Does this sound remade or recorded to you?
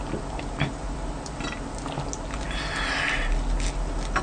recorded